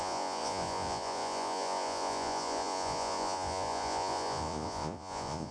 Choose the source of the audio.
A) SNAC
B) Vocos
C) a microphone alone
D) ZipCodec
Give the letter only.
B